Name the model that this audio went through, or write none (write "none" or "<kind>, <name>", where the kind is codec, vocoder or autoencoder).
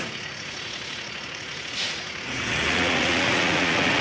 vocoder, Vocos